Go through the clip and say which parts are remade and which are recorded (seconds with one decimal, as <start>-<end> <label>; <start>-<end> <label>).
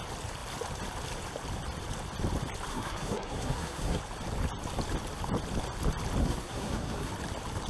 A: 0.0-2.7 recorded; 2.7-4.0 remade; 4.0-6.2 recorded; 6.2-7.1 remade; 7.1-7.7 recorded